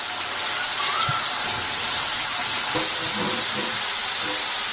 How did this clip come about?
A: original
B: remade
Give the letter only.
A